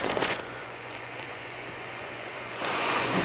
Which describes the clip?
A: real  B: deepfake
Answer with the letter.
B